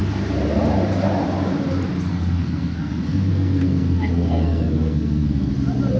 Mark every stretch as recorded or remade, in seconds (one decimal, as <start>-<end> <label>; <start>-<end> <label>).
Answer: 0.0-2.1 recorded; 2.1-5.5 remade; 5.5-6.0 recorded